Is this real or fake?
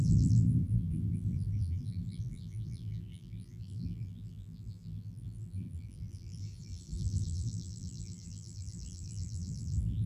fake